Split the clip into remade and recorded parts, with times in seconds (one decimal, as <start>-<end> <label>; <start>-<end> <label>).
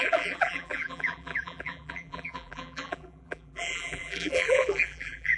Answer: 0.0-5.4 remade